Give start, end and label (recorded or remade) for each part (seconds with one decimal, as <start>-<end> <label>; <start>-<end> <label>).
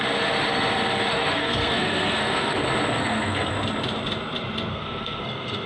0.0-1.1 recorded; 1.1-2.6 remade; 2.6-3.0 recorded; 3.0-3.5 remade; 3.5-4.7 recorded; 4.7-5.7 remade